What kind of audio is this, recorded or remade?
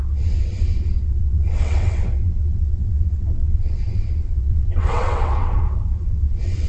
remade